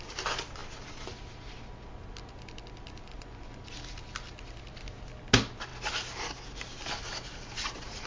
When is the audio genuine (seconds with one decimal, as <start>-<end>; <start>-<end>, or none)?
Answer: 0.0-3.1; 3.6-8.1